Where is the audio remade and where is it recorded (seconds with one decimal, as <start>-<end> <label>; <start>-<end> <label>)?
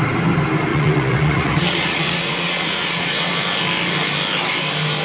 0.0-0.7 recorded; 0.7-3.3 remade; 3.3-5.0 recorded